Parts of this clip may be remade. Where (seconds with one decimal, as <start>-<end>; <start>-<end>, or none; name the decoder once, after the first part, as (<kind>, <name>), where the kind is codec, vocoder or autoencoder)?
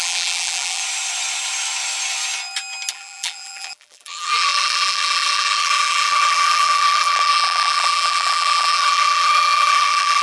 0.0-0.8 (vocoder, BigVGAN v2); 2.9-10.2